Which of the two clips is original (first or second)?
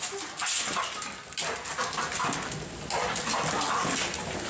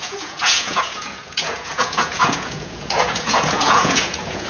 first